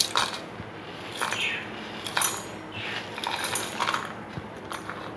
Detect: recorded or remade recorded